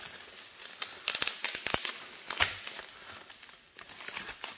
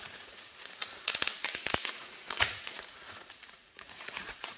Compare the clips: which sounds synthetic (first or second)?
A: second